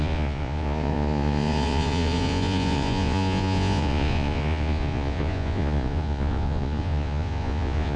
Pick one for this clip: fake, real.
fake